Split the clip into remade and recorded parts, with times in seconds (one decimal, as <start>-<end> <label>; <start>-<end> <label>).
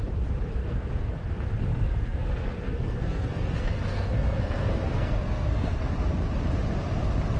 0.0-0.6 recorded; 0.6-1.2 remade; 1.2-1.7 recorded; 1.7-5.8 remade; 5.8-7.4 recorded